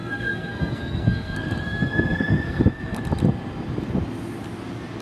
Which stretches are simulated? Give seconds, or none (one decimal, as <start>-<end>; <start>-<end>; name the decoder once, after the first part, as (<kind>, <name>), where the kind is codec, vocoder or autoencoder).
0.0-3.0 (codec, SNAC)